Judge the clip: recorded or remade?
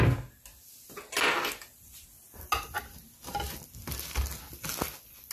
recorded